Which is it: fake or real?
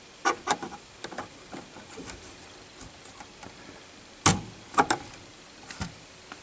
real